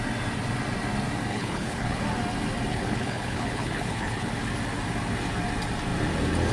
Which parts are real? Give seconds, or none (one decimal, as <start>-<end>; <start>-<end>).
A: 0.0-1.3; 2.0-2.7; 4.3-6.5

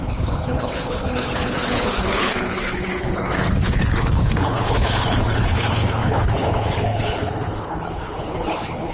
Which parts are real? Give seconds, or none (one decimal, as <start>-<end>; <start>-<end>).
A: none

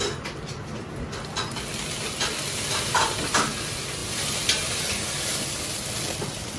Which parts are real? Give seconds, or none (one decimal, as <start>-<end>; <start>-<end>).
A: 0.0-6.6

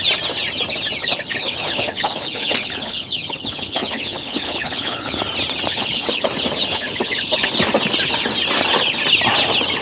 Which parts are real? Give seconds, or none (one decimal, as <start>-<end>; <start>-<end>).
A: 0.0-1.0; 5.2-5.7; 6.3-6.7; 7.5-9.8

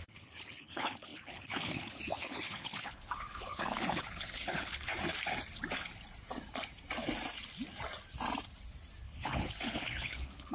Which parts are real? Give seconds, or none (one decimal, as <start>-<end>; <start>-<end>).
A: 4.9-9.0